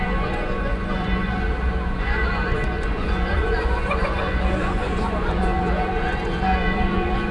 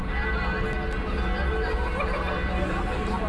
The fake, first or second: first